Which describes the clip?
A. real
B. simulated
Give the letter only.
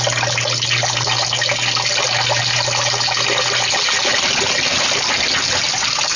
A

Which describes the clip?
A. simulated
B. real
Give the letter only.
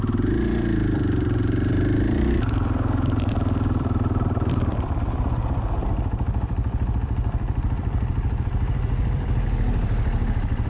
A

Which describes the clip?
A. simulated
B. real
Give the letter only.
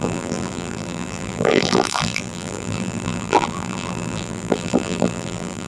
A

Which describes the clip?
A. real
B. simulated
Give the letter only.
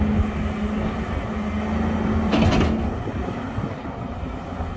A